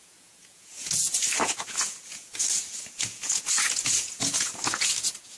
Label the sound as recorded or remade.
remade